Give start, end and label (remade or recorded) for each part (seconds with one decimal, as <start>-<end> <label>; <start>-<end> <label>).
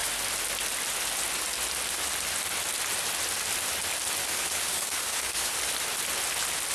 0.0-4.2 recorded; 4.2-5.6 remade; 5.6-6.7 recorded